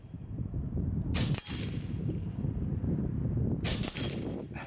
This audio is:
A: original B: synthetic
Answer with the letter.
A